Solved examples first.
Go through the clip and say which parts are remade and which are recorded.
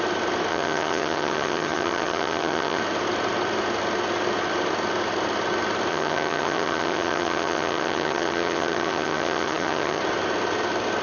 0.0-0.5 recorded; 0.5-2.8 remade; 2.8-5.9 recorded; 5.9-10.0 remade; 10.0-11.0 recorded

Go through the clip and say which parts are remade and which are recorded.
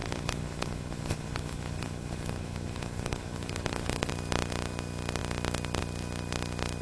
0.0-4.1 remade; 4.1-6.8 recorded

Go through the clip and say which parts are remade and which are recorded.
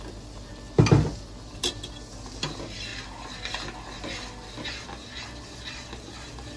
0.0-6.6 recorded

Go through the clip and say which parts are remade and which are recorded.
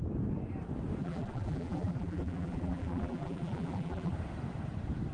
0.0-1.0 recorded; 1.0-4.1 remade; 4.1-5.1 recorded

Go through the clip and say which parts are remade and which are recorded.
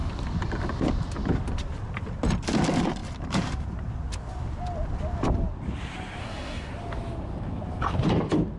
0.0-6.2 recorded; 6.2-6.7 remade; 6.7-8.6 recorded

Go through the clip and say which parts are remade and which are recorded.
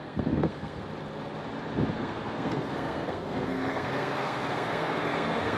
0.0-0.8 remade; 0.8-1.9 recorded; 1.9-5.6 remade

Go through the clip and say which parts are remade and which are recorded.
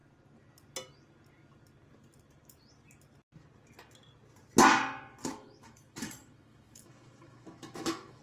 0.0-5.2 recorded; 5.2-8.2 remade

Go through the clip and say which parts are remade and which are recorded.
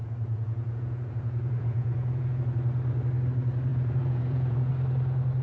0.0-2.4 remade; 2.4-3.7 recorded; 3.7-4.7 remade; 4.7-5.4 recorded